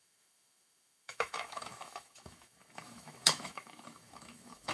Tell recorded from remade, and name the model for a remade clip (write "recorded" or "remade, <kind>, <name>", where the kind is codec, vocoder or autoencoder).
remade, autoencoder, DAC-VAE